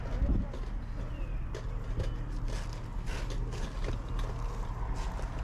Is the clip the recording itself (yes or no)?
yes